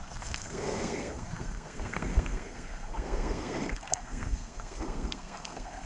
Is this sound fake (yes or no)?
yes